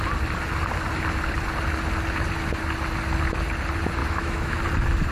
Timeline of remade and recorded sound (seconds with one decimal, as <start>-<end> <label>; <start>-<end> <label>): 0.0-4.0 recorded; 4.0-4.6 remade; 4.6-5.1 recorded